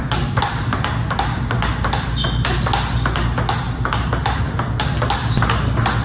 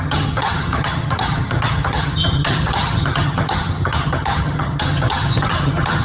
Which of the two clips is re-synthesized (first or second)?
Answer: second